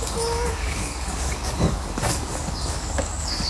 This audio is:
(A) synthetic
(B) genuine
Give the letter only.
A